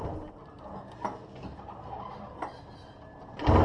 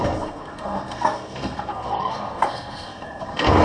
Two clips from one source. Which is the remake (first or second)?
second